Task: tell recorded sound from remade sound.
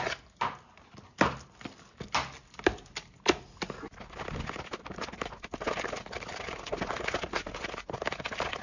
recorded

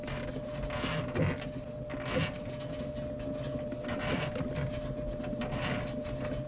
recorded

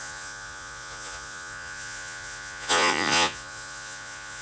remade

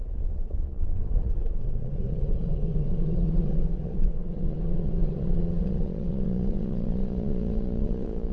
remade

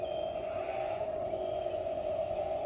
remade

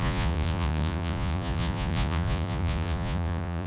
remade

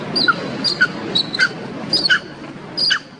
recorded